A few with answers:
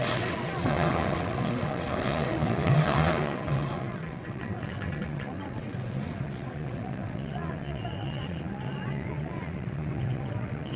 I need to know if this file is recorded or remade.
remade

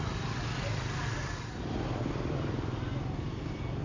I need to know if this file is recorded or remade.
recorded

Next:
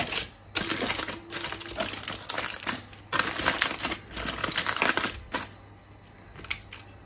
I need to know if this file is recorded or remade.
recorded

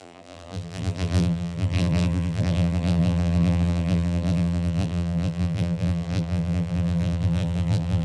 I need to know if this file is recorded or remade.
remade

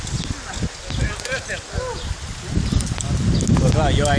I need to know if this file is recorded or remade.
recorded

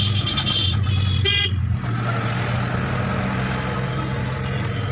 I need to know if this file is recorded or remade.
recorded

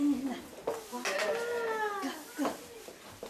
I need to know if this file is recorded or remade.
recorded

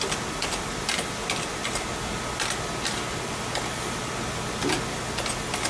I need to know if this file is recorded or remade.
recorded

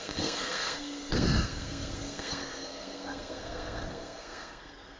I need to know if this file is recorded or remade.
remade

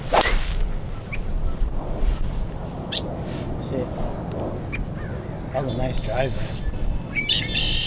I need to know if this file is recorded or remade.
recorded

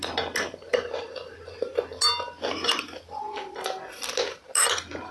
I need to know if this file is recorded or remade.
recorded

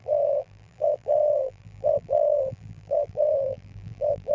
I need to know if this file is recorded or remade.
remade